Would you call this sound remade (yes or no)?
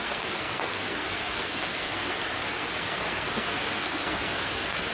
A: yes